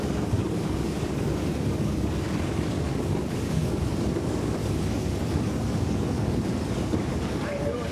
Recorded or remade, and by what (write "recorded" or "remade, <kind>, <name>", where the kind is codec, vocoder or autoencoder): remade, codec, DAC